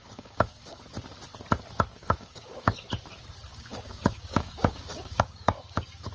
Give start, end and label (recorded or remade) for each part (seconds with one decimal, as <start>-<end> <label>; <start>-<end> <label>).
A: 0.0-0.8 remade; 0.8-1.9 recorded; 1.9-2.9 remade; 2.9-3.5 recorded; 3.5-6.1 remade